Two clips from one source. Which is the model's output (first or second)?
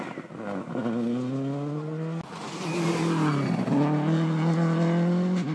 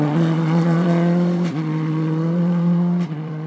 second